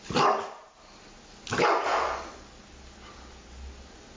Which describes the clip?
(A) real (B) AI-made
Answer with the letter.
A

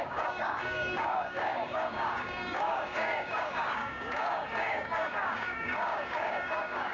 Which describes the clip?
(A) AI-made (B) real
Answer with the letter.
A